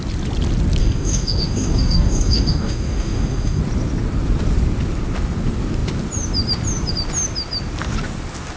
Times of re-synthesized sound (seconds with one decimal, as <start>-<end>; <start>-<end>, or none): 0.8-3.6

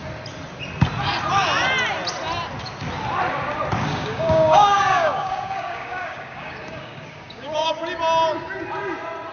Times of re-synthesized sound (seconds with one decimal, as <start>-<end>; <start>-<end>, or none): 3.9-7.7

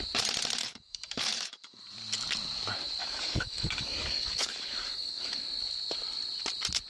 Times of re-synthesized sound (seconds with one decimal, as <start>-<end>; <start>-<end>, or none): 0.6-1.8; 3.0-5.4

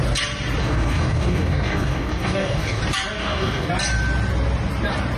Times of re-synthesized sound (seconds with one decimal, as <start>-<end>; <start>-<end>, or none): 0.6-2.8; 3.2-3.7

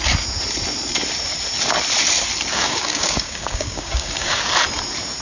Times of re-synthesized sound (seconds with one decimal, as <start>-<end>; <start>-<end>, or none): 2.5-4.5

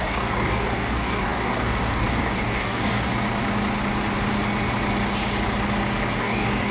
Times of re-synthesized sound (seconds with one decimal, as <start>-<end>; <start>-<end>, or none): 0.0-3.1; 6.2-6.7

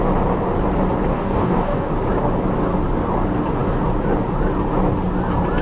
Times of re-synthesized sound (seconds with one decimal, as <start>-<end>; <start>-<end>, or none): 1.1-1.9